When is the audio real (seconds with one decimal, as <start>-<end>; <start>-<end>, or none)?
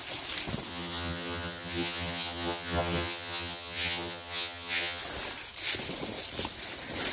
0.0-0.7; 5.0-7.1